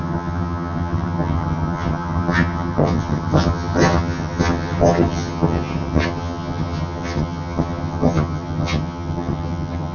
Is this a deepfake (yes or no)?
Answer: yes